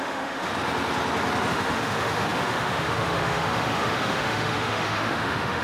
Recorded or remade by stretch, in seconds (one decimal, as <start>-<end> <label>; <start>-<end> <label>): 0.0-0.5 remade; 0.5-1.5 recorded; 1.5-5.6 remade